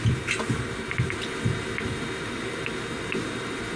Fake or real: real